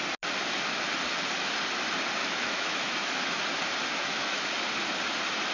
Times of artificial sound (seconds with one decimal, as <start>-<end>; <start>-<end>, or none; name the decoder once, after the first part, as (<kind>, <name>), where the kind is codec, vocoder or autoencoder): 2.2-3.4 (autoencoder, DAC-VAE); 3.9-4.5